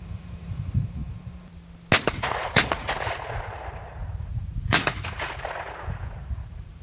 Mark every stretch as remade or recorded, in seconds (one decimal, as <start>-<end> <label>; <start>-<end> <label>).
0.0-1.0 remade; 1.0-2.1 recorded; 2.1-6.8 remade